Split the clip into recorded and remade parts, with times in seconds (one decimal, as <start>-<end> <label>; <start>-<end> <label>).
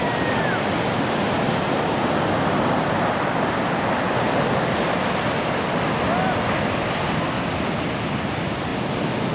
0.0-9.3 recorded